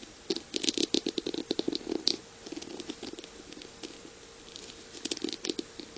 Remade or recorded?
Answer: recorded